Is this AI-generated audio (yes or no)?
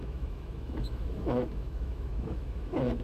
yes